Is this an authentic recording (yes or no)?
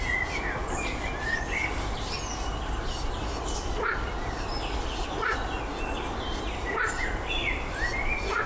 yes